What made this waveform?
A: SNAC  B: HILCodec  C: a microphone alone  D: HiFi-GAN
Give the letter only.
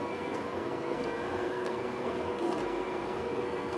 A